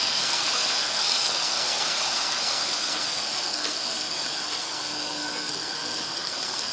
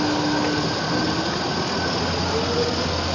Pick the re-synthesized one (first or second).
first